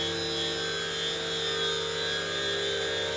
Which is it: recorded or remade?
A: recorded